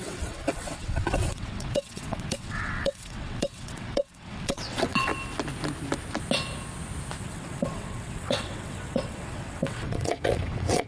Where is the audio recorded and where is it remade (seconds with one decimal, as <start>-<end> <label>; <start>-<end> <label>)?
0.0-5.1 remade; 5.1-7.2 recorded; 7.2-10.9 remade